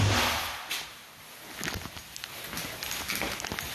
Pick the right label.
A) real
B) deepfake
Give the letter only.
A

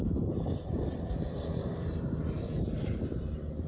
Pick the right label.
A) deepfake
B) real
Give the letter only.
A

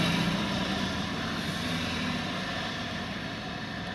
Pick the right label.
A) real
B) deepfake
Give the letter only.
B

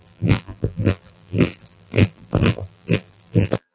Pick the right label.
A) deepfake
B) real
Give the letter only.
A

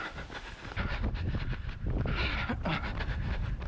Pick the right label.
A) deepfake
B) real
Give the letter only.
B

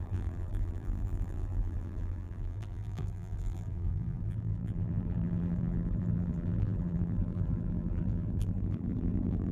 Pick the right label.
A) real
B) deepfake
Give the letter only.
B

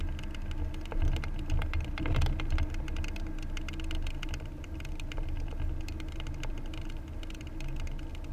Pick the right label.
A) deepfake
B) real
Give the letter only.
B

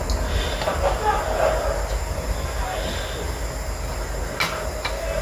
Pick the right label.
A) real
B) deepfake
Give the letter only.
A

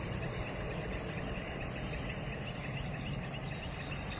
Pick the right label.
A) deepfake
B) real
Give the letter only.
A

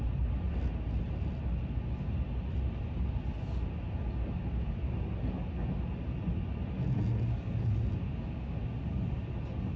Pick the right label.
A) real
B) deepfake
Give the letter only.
A